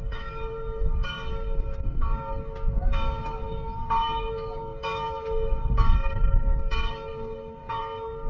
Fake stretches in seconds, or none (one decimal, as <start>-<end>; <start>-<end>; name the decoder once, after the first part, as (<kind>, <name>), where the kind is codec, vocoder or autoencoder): 0.0-8.3 (codec, DAC)